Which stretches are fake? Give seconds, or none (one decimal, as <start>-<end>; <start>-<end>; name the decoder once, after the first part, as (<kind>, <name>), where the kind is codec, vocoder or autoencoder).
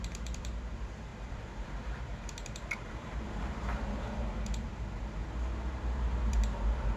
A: 0.0-7.0 (vocoder, BigVGAN v2)